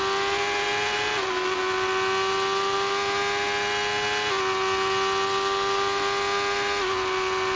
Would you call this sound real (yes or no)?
yes